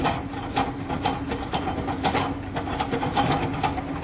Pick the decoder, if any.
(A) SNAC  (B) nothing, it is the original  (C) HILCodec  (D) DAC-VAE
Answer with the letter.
B